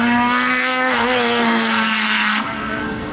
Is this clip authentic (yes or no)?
no